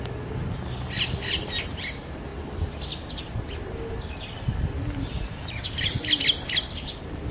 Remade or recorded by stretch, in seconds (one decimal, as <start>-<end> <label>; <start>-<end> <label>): 0.0-7.3 recorded